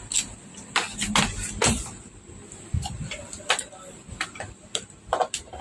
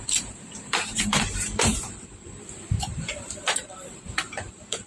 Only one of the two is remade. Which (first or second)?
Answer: second